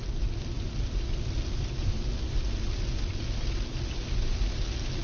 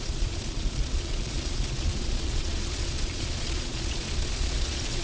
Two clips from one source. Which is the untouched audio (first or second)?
first